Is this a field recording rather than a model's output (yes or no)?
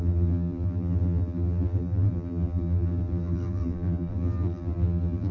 no